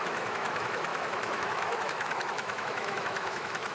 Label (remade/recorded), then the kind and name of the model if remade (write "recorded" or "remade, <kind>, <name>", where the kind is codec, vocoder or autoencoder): remade, autoencoder, DAC-VAE